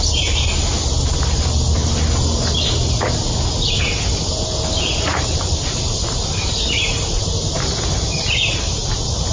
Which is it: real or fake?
real